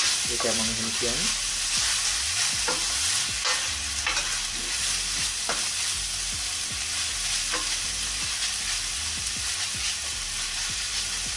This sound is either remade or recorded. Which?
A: recorded